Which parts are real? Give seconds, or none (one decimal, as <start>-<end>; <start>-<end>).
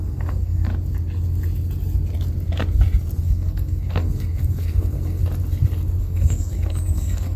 0.7-3.2; 5.2-6.0